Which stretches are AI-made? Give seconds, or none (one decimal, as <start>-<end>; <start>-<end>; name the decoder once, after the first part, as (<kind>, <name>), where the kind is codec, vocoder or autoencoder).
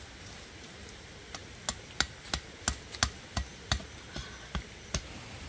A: none